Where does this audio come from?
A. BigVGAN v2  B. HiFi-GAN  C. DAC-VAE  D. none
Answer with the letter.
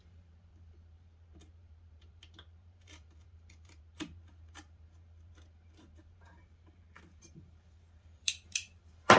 A